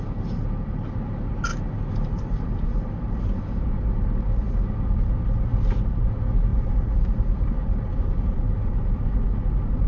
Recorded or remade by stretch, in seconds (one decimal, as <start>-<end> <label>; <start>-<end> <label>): 0.0-1.5 recorded; 1.5-3.6 remade; 3.6-6.5 recorded; 6.5-9.0 remade; 9.0-9.9 recorded